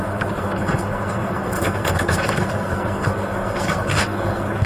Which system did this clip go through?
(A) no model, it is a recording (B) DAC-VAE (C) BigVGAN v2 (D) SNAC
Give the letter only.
D